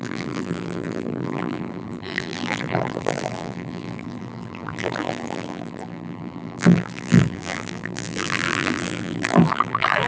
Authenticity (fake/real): fake